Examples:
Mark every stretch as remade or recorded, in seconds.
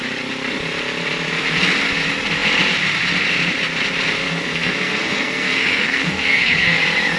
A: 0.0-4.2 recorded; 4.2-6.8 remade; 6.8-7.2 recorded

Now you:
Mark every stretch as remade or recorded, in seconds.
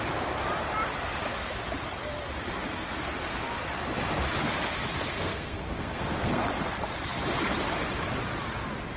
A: 0.0-5.1 recorded; 5.1-6.4 remade; 6.4-9.0 recorded